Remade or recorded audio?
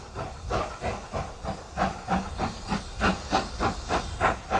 recorded